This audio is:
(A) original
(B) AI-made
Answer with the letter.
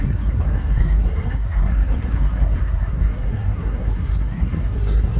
B